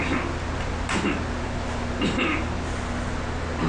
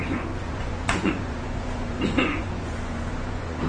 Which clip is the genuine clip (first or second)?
first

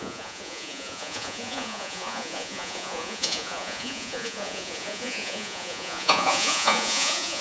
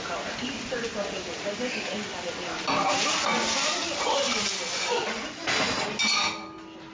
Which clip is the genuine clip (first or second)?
second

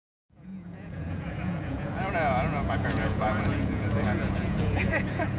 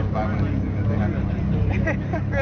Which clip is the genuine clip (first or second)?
second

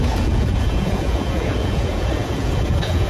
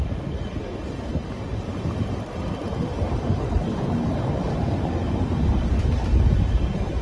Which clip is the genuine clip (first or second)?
second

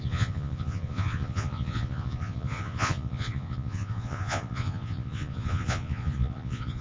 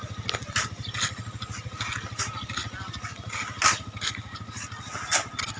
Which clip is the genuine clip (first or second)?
second